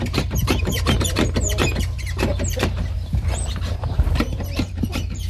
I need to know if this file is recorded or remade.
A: remade